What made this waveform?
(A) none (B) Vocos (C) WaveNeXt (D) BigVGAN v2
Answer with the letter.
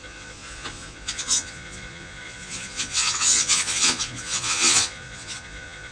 B